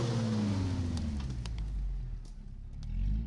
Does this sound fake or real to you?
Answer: real